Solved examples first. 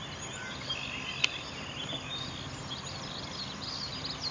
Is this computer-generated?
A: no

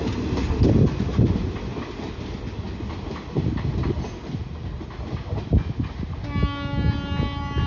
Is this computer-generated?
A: no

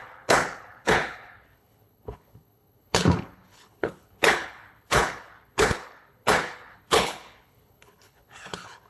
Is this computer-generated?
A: yes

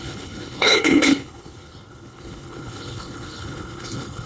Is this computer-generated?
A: yes